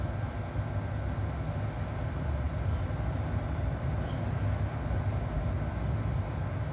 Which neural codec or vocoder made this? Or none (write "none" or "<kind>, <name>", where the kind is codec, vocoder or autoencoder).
none